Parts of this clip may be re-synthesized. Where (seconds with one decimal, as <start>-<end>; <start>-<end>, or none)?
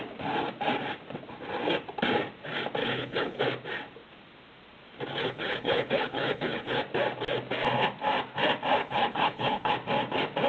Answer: 2.8-3.4; 5.2-6.8; 8.8-9.7